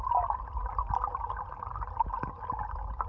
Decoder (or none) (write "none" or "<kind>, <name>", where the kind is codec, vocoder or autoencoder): none